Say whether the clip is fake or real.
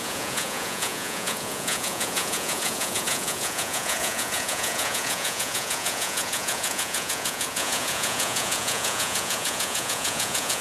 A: fake